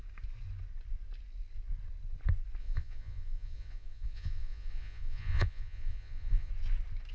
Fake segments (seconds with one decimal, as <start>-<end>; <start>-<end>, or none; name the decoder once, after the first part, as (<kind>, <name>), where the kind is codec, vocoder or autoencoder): 2.6-6.5 (vocoder, Vocos)